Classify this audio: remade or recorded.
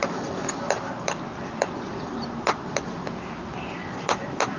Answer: recorded